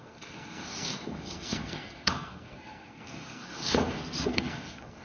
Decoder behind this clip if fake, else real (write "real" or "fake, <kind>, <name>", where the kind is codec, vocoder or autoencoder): fake, codec, SNAC